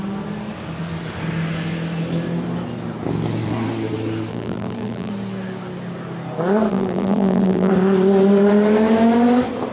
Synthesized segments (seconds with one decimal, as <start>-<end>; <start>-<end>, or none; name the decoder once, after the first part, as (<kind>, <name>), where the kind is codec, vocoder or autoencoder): 4.3-5.1 (vocoder, BigVGAN v2); 6.7-7.7